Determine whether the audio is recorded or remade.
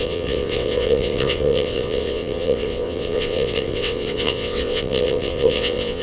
remade